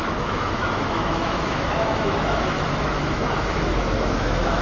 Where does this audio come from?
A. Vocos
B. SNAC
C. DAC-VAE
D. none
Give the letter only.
C